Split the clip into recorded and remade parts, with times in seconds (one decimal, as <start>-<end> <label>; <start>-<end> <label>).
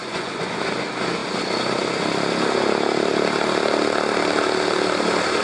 0.0-0.6 remade; 0.6-5.4 recorded